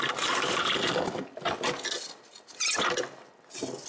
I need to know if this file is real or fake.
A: real